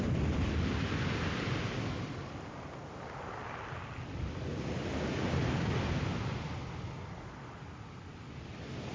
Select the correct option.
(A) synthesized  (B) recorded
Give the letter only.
B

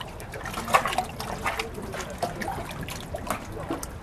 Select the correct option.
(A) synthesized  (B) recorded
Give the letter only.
B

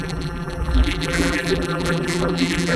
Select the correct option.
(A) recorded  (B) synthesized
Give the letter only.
B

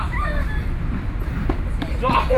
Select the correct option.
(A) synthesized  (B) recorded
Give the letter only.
B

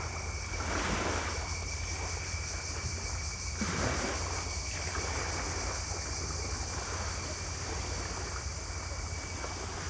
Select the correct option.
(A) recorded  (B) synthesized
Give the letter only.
A